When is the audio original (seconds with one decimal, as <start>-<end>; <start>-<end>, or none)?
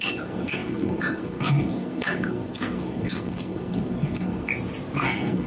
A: 4.5-5.0